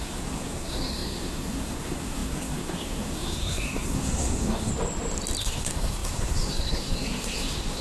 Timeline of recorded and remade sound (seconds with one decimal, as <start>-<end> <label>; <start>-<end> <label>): 0.0-4.7 remade; 4.7-5.4 recorded; 5.4-7.8 remade